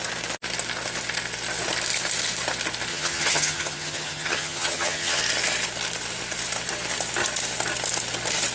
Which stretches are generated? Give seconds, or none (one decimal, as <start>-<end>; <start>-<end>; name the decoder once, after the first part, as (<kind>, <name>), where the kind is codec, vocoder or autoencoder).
2.9-5.2 (vocoder, HiFi-GAN)